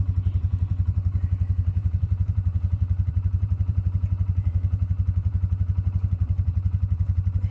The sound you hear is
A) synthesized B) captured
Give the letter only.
A